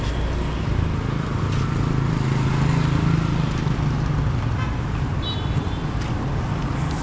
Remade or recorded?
recorded